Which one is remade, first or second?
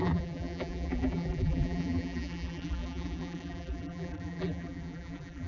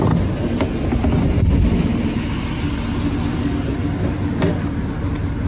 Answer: first